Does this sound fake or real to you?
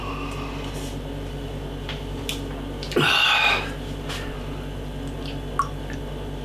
real